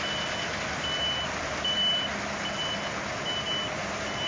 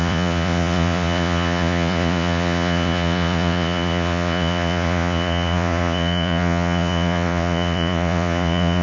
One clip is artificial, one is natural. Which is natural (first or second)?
first